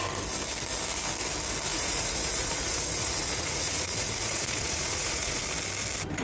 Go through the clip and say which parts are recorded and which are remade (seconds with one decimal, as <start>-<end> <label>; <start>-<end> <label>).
0.0-1.7 recorded; 1.7-5.4 remade; 5.4-6.2 recorded

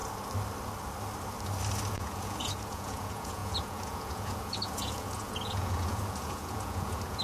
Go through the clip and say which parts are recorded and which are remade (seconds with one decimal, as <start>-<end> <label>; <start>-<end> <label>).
0.0-1.9 recorded; 1.9-7.2 remade

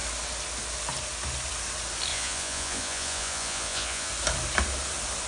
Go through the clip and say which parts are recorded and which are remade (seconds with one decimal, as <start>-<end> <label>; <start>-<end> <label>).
0.0-2.1 recorded; 2.1-4.1 remade; 4.1-5.3 recorded

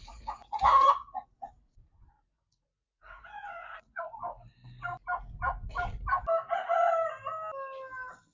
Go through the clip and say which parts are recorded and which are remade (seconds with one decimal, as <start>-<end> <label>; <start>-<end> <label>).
0.0-4.0 remade; 4.0-8.3 recorded

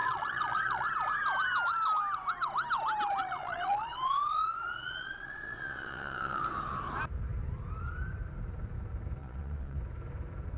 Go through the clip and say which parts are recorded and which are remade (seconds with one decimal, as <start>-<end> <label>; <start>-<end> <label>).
0.0-0.9 remade; 0.9-3.2 recorded; 3.2-6.4 remade; 6.4-9.2 recorded; 9.2-9.8 remade; 9.8-10.6 recorded